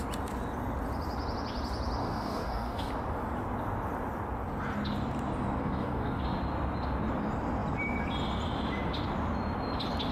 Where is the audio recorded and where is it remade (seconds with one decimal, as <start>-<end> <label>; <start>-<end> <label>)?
0.0-2.0 recorded; 2.0-2.9 remade; 2.9-5.6 recorded; 5.6-6.2 remade; 6.2-10.1 recorded